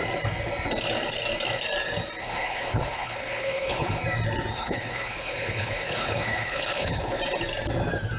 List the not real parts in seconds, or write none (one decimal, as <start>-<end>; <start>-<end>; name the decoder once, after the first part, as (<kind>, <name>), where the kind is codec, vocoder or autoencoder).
2.2-4.0 (codec, HILCodec); 4.5-7.2